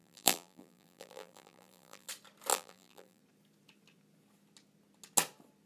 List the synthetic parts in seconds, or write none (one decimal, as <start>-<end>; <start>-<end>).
0.0-2.1; 2.5-3.2